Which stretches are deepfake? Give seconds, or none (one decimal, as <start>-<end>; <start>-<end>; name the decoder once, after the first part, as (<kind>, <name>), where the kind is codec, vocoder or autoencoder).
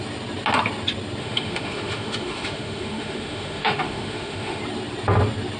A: 1.2-4.6 (autoencoder, DAC-VAE)